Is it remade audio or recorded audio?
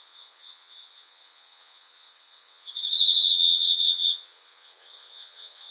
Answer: remade